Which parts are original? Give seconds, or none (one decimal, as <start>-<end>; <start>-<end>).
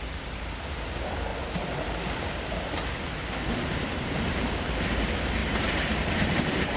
0.0-5.4